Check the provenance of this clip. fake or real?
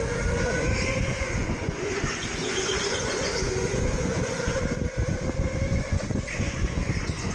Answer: fake